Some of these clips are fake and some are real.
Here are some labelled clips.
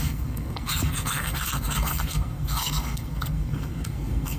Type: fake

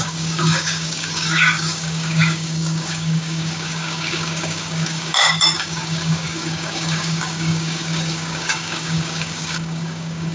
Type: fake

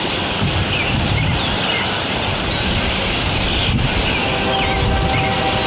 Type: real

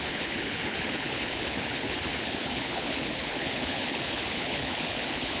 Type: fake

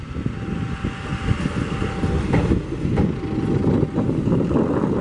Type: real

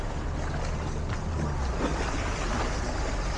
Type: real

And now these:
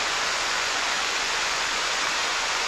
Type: fake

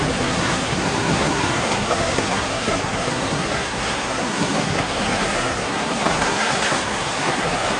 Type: fake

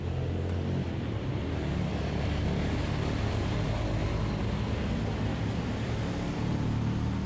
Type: real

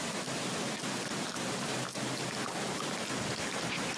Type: real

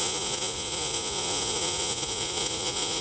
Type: fake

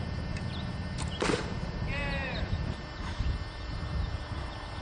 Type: fake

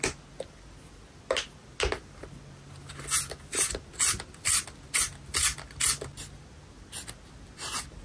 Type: real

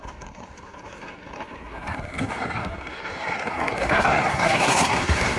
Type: fake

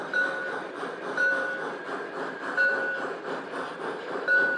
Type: fake